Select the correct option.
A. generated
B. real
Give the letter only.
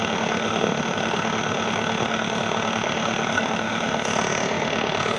A